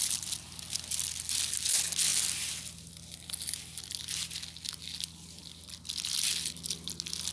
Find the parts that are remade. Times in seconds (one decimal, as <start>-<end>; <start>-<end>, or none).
none